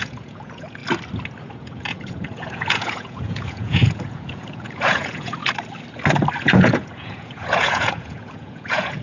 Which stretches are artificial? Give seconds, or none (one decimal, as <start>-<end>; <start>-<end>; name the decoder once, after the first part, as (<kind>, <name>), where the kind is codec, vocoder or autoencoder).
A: 0.0-0.8 (vocoder, Vocos); 1.5-5.4; 6.4-9.0